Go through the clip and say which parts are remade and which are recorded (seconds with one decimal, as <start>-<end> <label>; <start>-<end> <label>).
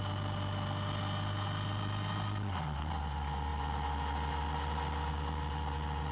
0.0-6.1 recorded